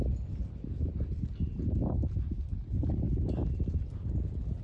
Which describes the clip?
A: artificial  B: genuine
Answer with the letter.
B